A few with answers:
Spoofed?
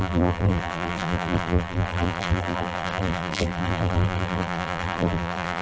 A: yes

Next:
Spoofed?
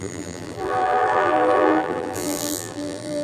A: yes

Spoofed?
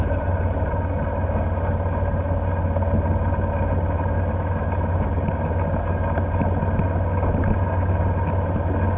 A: no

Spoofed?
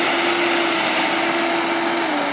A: no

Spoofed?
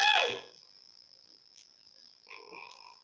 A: yes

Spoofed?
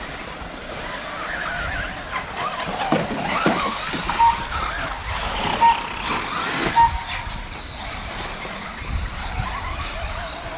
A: no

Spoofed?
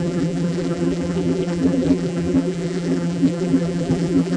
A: yes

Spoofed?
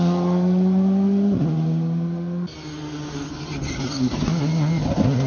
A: no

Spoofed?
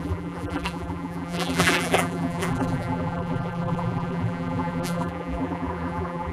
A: yes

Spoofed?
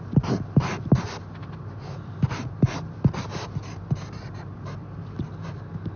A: no